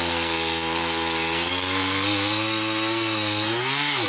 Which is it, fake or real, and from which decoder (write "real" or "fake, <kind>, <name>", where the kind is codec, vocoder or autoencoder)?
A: fake, codec, SNAC